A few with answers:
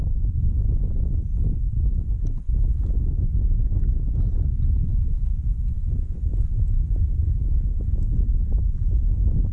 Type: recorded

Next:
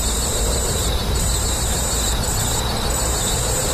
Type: remade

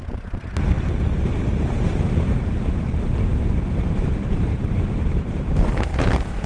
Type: remade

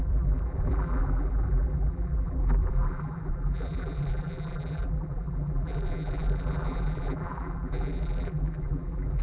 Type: remade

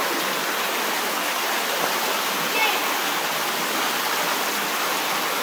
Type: recorded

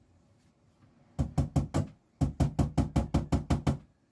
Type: recorded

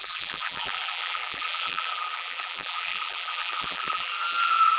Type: remade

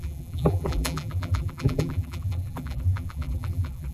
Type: remade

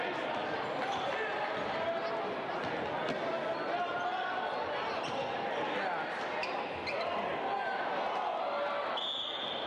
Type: recorded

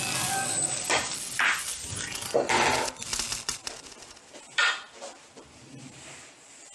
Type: remade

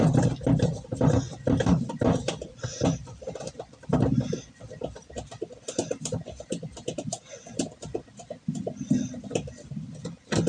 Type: remade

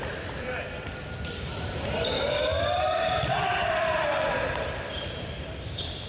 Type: remade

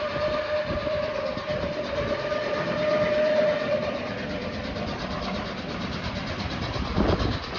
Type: remade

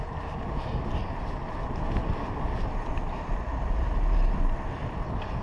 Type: recorded